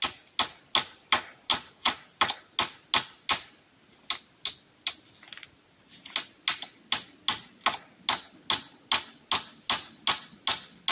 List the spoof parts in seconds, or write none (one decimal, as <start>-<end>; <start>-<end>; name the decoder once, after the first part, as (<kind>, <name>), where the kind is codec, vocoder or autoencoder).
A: 1.5-2.1 (vocoder, Vocos)